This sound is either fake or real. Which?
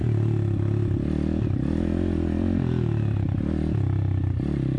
real